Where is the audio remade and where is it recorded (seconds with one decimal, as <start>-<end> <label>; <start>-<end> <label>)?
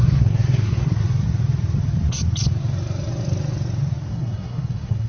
0.0-1.0 remade; 1.0-4.1 recorded; 4.1-5.1 remade